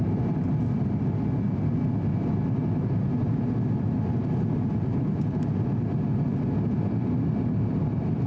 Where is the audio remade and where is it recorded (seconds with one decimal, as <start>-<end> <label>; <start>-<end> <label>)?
0.0-8.3 recorded